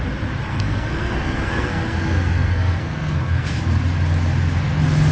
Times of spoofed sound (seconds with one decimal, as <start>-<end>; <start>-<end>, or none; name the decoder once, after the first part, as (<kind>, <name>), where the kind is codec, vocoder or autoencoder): 0.5-3.6 (codec, SNAC)